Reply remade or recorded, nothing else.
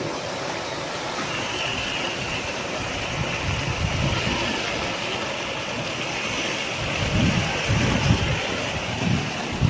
recorded